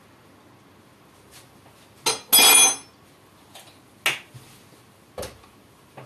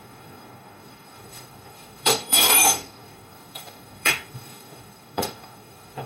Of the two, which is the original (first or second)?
first